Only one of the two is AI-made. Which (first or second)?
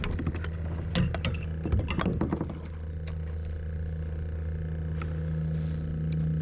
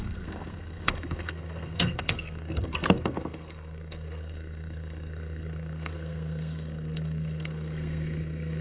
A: second